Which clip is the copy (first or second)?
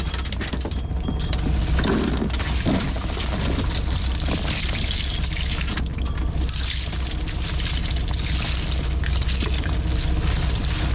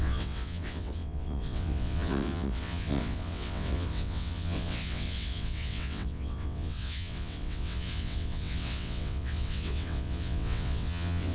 second